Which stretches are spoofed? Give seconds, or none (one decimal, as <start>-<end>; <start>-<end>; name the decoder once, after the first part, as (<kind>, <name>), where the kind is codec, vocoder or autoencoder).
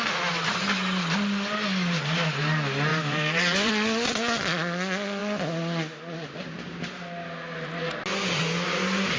2.9-3.7 (vocoder, BigVGAN v2)